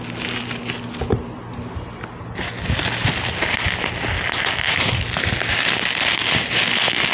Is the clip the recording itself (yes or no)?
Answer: yes